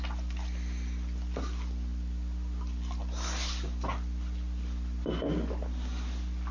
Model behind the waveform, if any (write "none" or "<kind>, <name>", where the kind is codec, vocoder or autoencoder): none